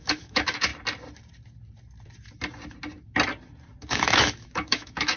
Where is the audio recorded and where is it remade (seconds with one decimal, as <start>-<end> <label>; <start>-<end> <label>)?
0.0-0.7 remade; 0.7-3.8 recorded; 3.8-5.2 remade